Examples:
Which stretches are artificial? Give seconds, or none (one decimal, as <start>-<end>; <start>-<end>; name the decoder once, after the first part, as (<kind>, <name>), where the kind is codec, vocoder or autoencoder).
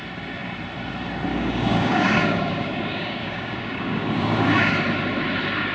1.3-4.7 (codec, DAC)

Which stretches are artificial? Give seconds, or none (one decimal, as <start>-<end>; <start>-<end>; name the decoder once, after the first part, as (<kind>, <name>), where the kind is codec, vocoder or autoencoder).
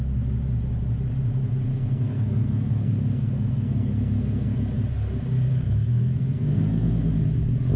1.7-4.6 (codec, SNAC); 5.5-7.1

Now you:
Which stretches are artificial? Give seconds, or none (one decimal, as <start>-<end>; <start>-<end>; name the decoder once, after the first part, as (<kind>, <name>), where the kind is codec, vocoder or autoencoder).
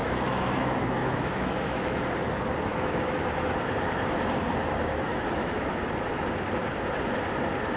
0.0-2.0 (autoencoder, DAC-VAE); 2.7-3.3; 5.1-5.8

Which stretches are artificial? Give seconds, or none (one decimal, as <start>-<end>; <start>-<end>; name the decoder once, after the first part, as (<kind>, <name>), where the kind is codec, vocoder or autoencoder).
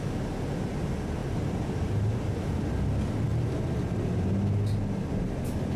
1.2-2.5 (vocoder, BigVGAN v2)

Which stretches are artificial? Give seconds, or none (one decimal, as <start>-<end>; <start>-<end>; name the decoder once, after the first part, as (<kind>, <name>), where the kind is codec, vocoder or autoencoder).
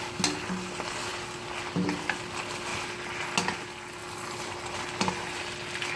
none